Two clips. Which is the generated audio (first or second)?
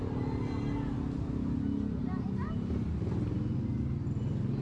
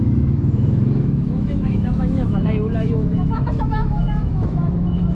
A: second